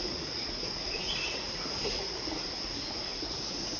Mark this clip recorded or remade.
remade